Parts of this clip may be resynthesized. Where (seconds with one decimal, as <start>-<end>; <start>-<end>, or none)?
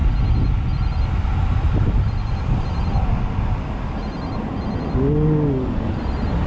none